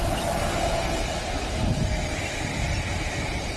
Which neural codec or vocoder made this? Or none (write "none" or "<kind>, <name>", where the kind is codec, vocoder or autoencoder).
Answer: none